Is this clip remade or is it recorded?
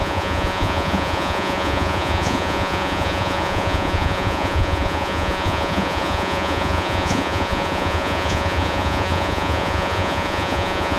remade